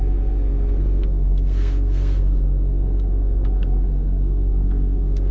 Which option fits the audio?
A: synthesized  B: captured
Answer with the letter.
A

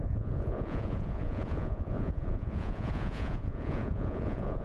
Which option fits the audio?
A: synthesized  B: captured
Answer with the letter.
A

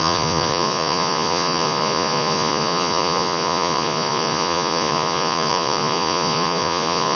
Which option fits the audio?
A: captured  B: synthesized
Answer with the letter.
B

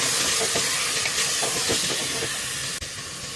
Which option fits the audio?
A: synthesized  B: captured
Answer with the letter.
B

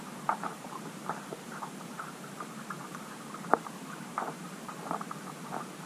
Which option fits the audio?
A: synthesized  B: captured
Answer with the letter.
A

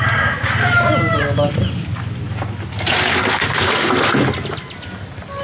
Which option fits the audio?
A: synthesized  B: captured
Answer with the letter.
B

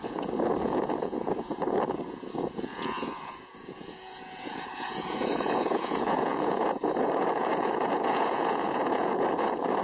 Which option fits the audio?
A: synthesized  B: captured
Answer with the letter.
A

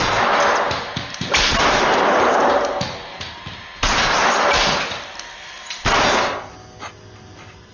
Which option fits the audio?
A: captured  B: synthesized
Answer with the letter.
A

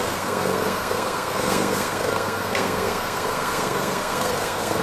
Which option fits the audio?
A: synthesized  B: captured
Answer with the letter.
A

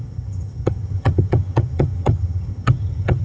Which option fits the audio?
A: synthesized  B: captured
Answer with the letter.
A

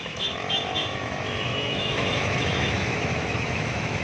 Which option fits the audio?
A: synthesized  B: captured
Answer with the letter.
A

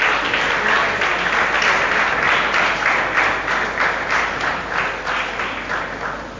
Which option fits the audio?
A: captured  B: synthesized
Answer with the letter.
A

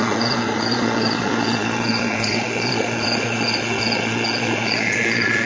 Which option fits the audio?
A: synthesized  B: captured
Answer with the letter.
A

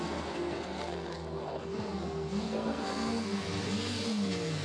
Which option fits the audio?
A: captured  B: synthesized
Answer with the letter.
B